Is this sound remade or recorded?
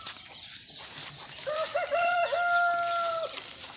recorded